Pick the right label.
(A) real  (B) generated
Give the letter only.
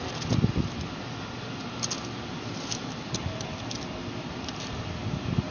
A